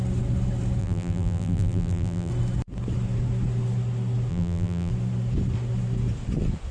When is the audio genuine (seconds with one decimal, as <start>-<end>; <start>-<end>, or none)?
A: 0.0-0.8; 2.3-4.3; 4.9-6.7